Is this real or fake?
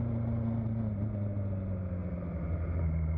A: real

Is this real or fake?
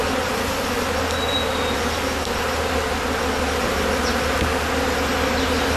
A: real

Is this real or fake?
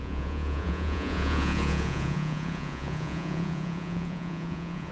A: fake